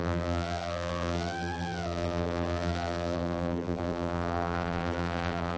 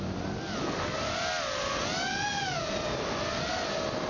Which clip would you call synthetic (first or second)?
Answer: first